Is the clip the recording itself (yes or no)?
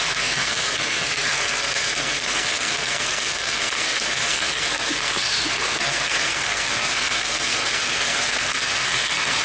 no